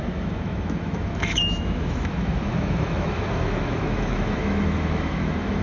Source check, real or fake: fake